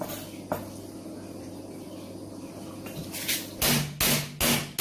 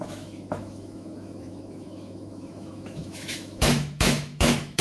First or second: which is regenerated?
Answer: second